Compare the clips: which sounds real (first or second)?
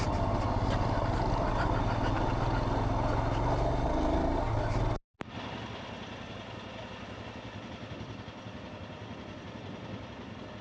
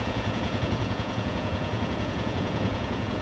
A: first